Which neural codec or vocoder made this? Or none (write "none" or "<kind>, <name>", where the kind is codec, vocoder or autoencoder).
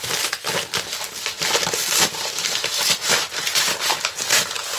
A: none